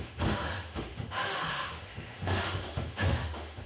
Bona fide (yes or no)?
no